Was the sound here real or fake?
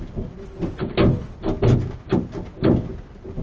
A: real